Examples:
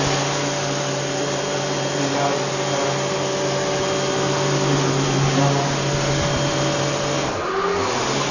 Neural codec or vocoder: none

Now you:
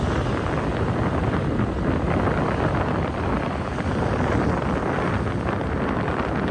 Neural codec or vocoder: none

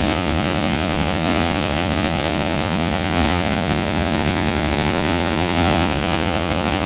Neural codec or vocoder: vocoder, Vocos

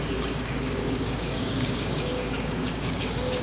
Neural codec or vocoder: codec, DAC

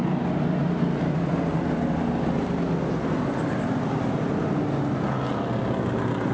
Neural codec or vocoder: none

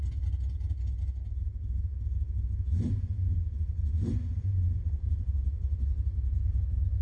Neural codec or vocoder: none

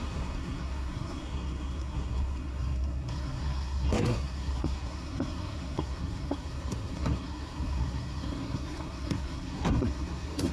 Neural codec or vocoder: codec, SNAC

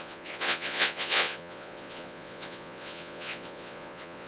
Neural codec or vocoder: vocoder, Vocos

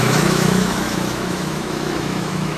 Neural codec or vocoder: autoencoder, DAC-VAE